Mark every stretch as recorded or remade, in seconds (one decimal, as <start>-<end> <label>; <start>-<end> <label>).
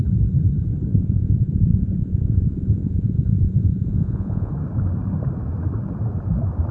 0.0-0.9 recorded; 0.9-4.5 remade; 4.5-6.7 recorded